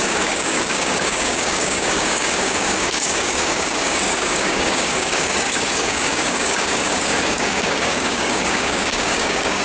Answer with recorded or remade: remade